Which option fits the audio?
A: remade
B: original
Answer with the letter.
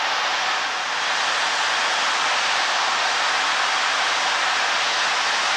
B